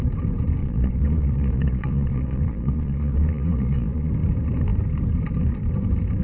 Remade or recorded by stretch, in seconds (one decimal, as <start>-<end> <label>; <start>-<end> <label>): 0.0-0.6 recorded; 0.6-4.1 remade; 4.1-6.2 recorded